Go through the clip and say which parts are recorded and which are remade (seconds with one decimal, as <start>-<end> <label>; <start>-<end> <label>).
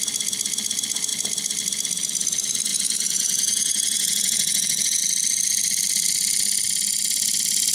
0.0-2.7 recorded; 2.7-5.0 remade; 5.0-7.7 recorded